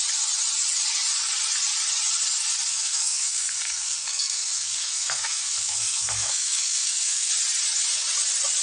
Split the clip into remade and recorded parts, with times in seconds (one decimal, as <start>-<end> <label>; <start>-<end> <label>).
0.0-2.7 recorded; 2.7-7.3 remade; 7.3-8.6 recorded